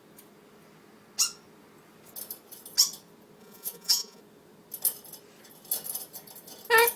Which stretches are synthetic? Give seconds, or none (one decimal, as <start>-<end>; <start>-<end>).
3.4-4.2

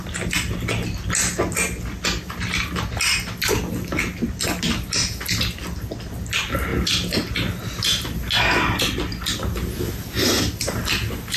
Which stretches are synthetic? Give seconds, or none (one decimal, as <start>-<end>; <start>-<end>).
none